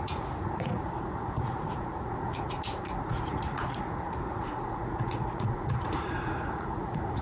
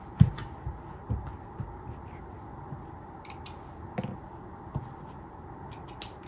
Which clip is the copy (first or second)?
first